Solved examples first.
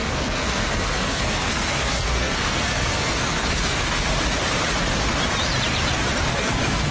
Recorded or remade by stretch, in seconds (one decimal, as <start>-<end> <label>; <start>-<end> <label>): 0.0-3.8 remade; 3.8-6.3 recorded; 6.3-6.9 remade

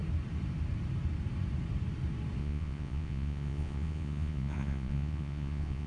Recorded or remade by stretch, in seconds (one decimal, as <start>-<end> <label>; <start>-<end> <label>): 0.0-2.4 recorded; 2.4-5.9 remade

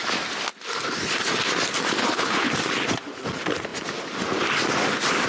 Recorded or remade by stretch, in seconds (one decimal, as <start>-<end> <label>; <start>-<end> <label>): 0.0-2.0 recorded; 2.0-2.5 remade; 2.5-5.3 recorded

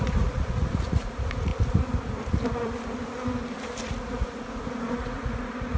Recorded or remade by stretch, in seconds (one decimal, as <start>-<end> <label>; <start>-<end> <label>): 0.0-1.5 remade; 1.5-4.1 recorded; 4.1-5.8 remade

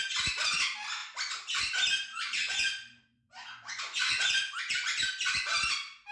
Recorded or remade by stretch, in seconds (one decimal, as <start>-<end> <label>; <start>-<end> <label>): 0.0-2.1 recorded; 2.1-4.6 remade; 4.6-6.1 recorded

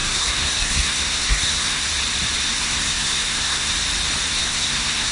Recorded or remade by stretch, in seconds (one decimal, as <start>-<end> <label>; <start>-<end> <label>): 0.0-1.9 remade; 1.9-2.6 recorded; 2.6-3.7 remade; 3.7-4.3 recorded; 4.3-5.1 remade